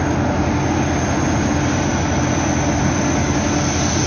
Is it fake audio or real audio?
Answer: real